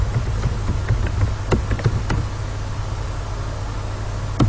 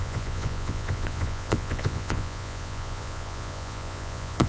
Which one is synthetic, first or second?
second